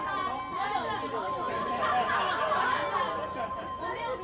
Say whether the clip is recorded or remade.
recorded